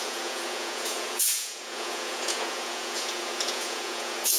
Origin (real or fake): fake